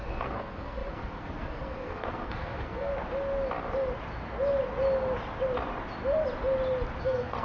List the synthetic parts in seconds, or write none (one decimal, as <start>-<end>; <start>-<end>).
0.0-2.9; 7.0-7.4